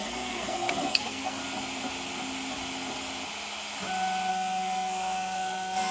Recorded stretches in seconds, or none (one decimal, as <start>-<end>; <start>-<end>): 1.4-4.3